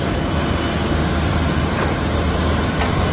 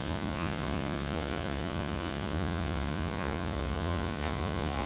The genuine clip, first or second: first